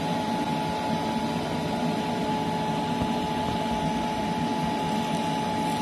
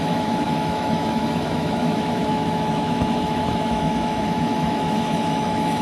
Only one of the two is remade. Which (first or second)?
second